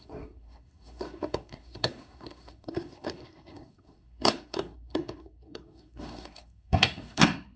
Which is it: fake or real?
fake